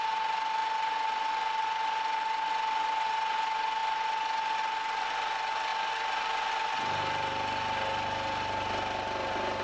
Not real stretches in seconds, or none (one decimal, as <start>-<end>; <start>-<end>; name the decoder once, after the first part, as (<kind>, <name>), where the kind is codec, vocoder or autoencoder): none